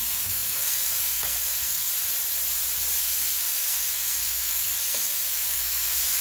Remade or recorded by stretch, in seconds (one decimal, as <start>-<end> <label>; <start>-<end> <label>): 0.0-1.9 remade; 1.9-3.0 recorded; 3.0-6.2 remade